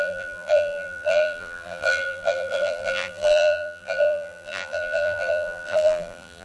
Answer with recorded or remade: remade